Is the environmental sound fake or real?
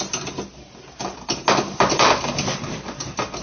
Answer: real